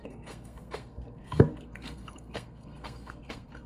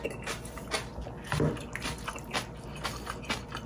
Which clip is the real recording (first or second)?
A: second